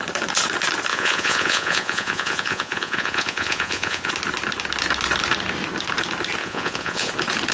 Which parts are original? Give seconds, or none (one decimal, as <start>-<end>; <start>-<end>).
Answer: 0.0-0.9; 4.1-6.4; 7.1-7.5